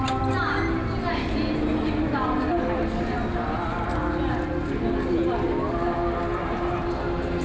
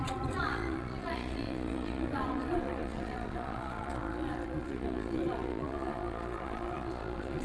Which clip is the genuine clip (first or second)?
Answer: first